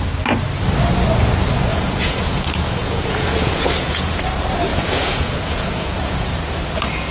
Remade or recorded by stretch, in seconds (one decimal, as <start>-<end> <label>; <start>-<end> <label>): 0.0-1.7 recorded; 1.7-4.2 remade; 4.2-4.7 recorded; 4.7-6.3 remade; 6.3-7.1 recorded